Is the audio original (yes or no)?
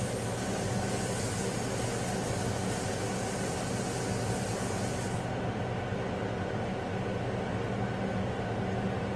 yes